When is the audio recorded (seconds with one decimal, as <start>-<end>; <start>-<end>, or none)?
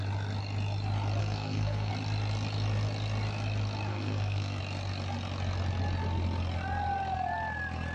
0.0-1.2; 1.9-3.9; 4.6-7.9